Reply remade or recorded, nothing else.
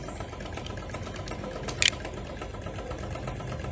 recorded